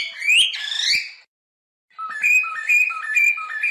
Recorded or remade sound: recorded